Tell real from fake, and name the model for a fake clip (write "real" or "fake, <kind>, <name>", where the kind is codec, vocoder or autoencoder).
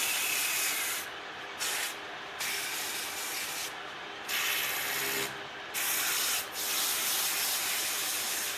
real